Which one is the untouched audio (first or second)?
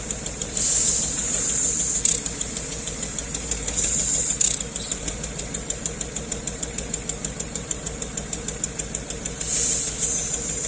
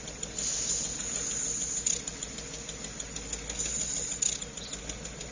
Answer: second